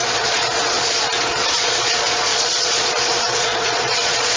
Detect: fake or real fake